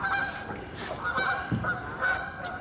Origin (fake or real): real